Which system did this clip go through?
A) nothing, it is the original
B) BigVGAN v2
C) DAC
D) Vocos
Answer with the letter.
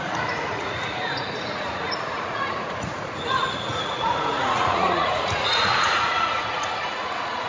D